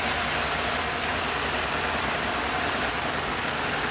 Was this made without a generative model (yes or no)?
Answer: yes